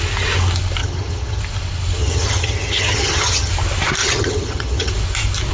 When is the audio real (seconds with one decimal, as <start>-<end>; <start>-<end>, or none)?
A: 0.0-0.8; 1.4-2.0; 3.5-4.0; 4.9-5.5